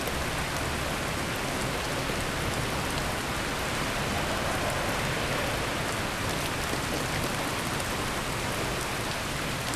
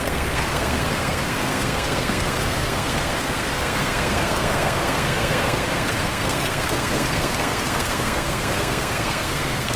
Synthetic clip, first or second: second